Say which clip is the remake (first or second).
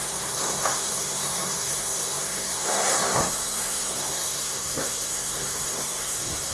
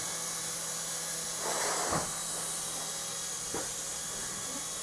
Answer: first